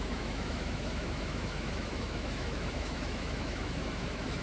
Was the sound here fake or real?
fake